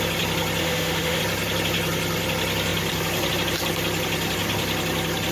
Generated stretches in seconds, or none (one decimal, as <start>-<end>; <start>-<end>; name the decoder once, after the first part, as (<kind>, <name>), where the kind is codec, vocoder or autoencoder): 0.6-1.2 (autoencoder, DAC-VAE)

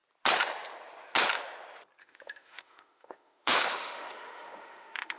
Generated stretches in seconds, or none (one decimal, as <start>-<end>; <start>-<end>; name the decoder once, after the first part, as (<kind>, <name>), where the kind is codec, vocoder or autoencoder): 2.0-5.2 (autoencoder, DAC-VAE)

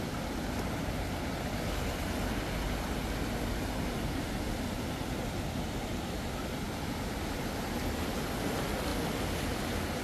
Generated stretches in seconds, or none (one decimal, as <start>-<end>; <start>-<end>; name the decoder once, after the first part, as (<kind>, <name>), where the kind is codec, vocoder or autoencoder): none

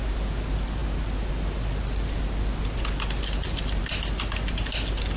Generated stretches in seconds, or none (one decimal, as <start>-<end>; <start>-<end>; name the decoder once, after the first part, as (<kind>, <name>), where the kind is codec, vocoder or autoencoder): none

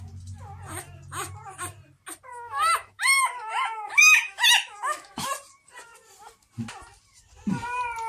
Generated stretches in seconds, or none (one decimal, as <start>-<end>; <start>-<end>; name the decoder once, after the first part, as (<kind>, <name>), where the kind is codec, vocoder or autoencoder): 2.3-5.3 (autoencoder, DAC-VAE)